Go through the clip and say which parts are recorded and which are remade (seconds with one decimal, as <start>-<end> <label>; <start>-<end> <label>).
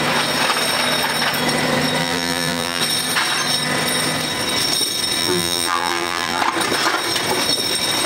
0.0-2.0 recorded; 2.0-2.8 remade; 2.8-5.2 recorded; 5.2-6.4 remade; 6.4-8.1 recorded